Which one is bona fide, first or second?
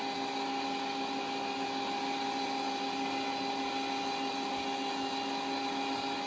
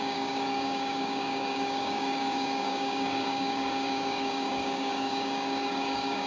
first